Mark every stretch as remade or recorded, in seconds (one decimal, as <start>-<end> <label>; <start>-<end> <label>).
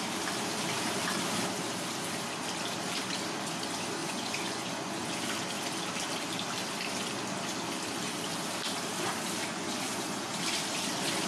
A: 0.0-4.0 recorded; 4.0-5.2 remade; 5.2-9.5 recorded; 9.5-10.3 remade; 10.3-11.3 recorded